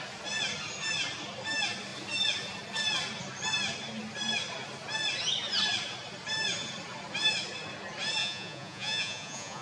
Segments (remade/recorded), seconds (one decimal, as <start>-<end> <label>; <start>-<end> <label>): 0.0-8.2 recorded; 8.2-9.6 remade